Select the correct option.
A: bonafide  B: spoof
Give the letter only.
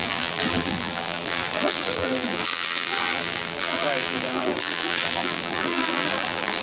B